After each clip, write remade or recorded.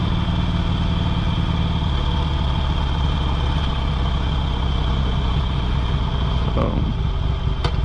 recorded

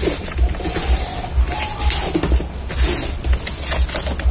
recorded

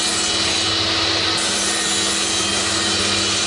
recorded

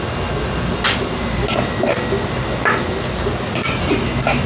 recorded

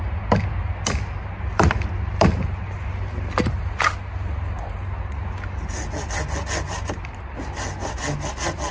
recorded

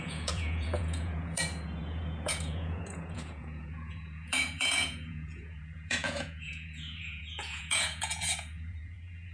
remade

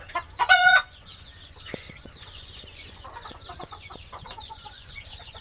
remade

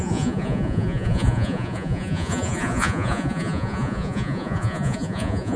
remade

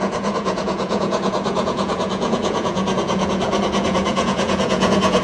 remade